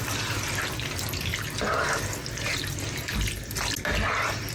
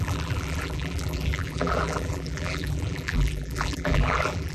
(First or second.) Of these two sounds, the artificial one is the second